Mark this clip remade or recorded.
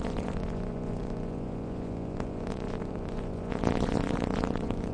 remade